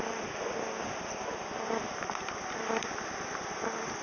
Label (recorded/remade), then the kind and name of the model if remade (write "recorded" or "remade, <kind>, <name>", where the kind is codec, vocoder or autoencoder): recorded